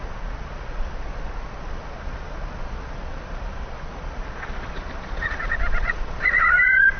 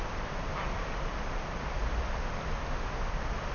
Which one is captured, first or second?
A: second